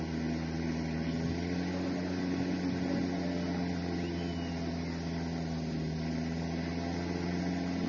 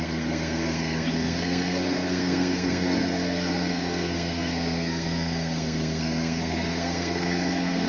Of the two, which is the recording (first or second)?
first